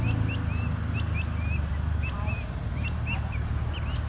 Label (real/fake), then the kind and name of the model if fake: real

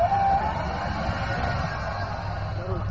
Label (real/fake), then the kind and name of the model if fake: real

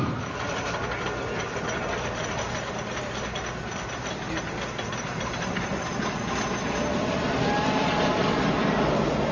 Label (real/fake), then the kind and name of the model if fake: real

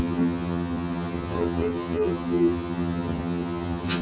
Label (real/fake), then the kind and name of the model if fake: fake, vocoder, HiFi-GAN